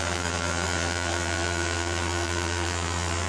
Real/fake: fake